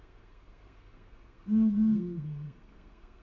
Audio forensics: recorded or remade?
remade